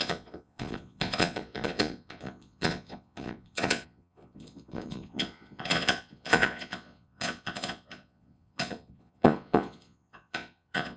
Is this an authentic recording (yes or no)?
no